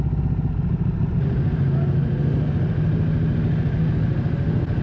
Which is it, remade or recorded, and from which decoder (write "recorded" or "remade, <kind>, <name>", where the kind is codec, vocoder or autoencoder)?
recorded